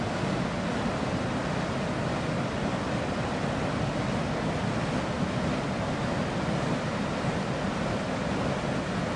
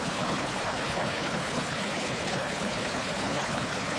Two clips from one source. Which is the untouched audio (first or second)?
first